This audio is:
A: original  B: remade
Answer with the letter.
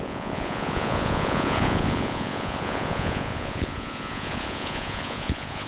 B